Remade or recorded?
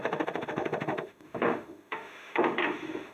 remade